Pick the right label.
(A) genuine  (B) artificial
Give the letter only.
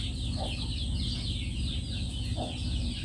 A